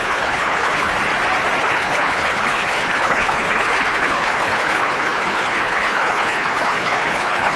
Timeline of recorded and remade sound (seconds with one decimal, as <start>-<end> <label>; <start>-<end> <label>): 0.0-0.9 remade; 0.9-1.6 recorded; 1.6-7.6 remade